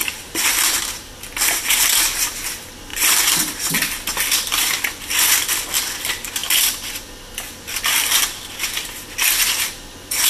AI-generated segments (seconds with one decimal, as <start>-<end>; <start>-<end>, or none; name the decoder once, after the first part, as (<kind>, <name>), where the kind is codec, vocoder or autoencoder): 0.0-1.1 (vocoder, BigVGAN v2)